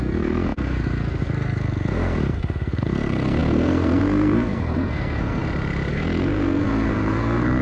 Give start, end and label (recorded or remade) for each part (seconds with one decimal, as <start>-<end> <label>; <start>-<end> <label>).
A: 0.0-5.4 remade; 5.4-5.9 recorded; 5.9-7.6 remade